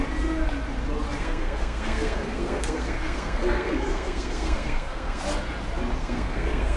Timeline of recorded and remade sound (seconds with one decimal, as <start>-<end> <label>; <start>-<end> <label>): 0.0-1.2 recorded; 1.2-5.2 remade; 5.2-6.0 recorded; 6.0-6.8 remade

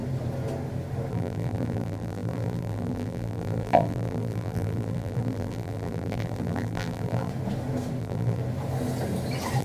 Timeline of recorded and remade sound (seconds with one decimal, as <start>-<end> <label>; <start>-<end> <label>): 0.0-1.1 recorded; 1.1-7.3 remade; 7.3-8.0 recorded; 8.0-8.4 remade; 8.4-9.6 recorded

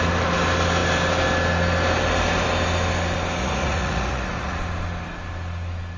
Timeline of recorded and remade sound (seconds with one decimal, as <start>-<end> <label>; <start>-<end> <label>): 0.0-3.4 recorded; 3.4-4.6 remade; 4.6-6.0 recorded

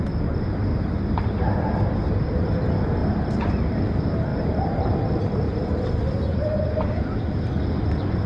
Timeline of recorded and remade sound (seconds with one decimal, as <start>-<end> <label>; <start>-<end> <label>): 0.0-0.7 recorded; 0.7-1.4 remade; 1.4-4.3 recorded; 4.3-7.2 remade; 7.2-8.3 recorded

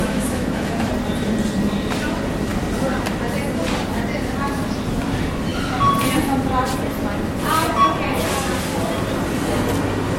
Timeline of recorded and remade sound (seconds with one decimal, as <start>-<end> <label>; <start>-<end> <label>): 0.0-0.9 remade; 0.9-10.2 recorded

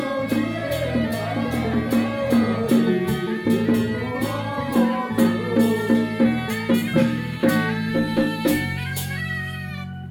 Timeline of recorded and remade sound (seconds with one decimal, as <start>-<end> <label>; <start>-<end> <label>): 0.0-7.0 recorded; 7.0-7.5 remade; 7.5-7.9 recorded; 7.9-9.7 remade; 9.7-10.1 recorded